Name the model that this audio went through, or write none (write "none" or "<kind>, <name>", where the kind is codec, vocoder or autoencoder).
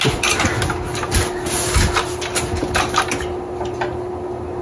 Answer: none